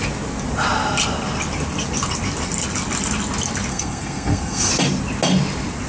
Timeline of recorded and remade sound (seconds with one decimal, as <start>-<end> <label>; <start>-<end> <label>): 0.0-3.7 recorded; 3.7-4.7 remade; 4.7-5.9 recorded